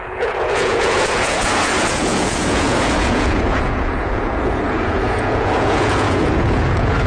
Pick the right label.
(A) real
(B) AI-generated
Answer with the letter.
B